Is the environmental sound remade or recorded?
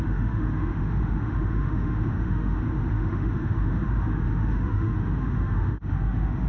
remade